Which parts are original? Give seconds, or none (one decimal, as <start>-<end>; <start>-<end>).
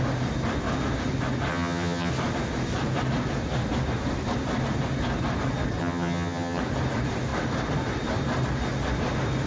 0.0-1.5; 2.1-5.8; 6.6-9.5